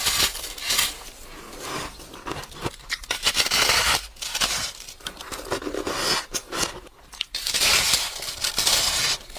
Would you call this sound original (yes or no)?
yes